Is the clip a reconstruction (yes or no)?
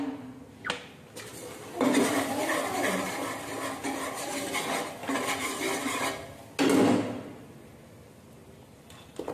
no